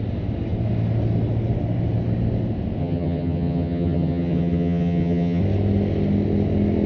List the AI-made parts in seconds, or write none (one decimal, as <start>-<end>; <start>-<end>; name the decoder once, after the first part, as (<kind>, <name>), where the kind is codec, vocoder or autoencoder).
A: 2.8-5.4 (vocoder, HiFi-GAN)